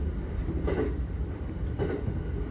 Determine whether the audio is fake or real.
real